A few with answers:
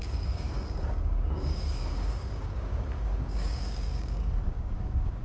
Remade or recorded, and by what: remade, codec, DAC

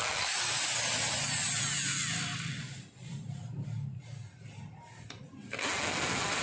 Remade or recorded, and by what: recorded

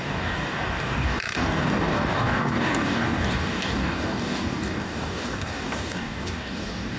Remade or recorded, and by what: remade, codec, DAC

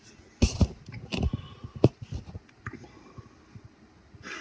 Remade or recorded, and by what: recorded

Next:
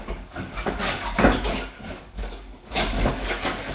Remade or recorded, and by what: remade, codec, DAC